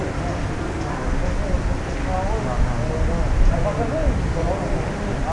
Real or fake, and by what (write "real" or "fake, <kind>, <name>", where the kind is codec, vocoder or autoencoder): real